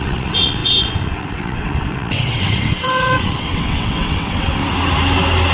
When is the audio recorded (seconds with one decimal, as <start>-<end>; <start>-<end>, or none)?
4.6-5.5